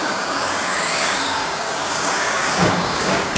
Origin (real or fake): fake